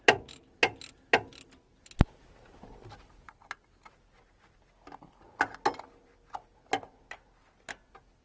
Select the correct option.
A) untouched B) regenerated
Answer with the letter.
A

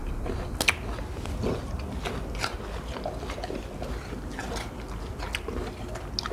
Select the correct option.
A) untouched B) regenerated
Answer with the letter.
A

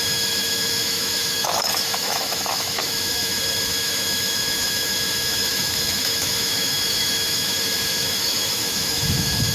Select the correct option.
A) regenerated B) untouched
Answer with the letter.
A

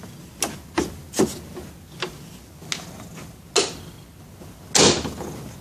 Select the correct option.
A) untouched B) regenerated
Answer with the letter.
A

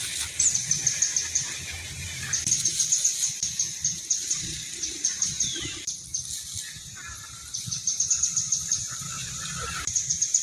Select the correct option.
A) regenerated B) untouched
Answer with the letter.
B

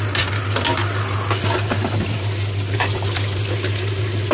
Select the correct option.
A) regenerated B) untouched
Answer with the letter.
B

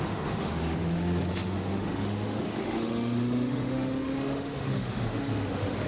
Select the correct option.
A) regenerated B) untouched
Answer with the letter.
A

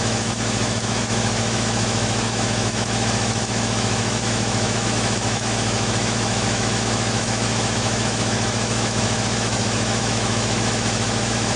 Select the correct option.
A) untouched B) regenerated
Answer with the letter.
B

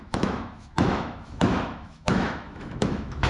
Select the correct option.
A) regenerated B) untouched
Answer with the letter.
A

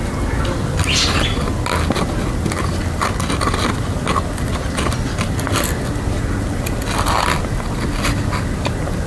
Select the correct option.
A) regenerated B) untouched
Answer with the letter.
B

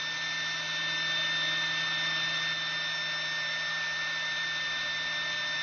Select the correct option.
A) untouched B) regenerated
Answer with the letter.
A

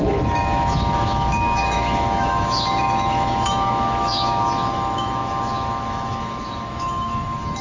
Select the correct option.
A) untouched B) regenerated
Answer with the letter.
B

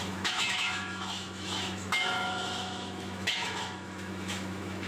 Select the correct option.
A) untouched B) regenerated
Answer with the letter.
B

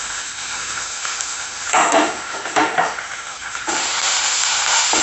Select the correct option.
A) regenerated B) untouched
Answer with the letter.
A